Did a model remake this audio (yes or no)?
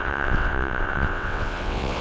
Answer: yes